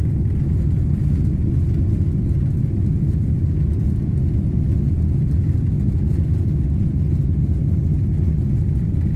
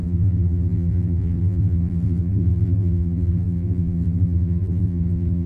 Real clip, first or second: first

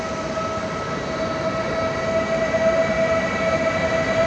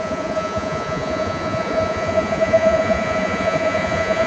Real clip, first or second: first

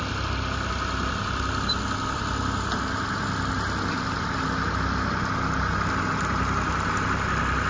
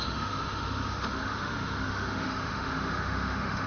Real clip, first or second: first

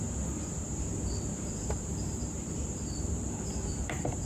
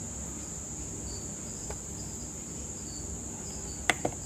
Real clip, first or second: second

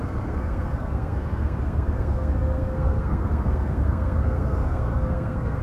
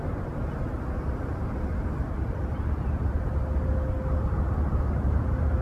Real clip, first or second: second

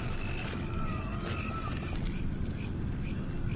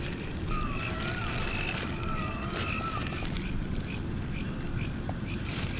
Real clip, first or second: first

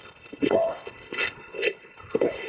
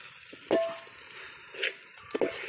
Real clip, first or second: second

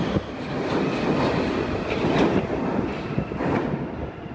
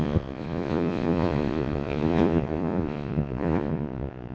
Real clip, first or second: first